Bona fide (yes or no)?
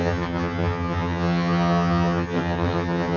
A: no